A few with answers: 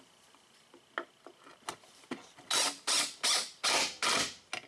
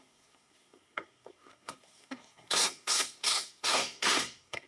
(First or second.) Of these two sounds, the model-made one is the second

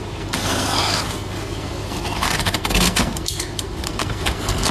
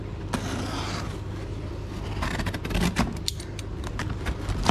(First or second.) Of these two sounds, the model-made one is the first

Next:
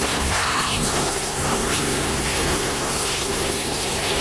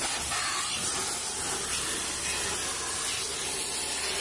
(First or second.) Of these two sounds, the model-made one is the first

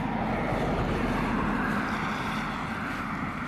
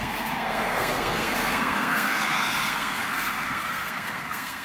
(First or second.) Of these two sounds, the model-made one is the second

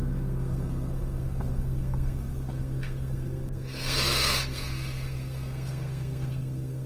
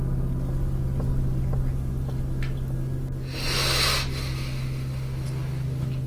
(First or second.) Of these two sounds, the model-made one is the first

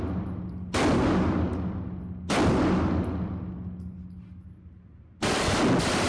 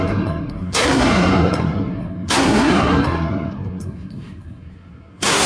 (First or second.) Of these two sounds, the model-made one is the second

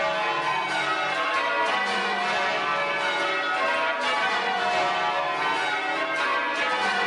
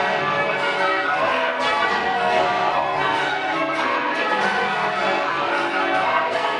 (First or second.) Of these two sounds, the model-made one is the second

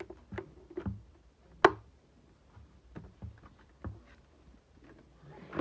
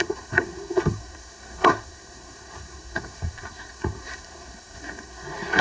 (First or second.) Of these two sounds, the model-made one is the second